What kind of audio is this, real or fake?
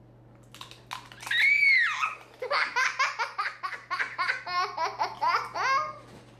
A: real